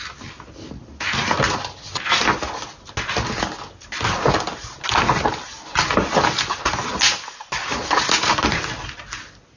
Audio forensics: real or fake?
real